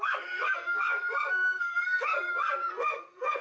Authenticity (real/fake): fake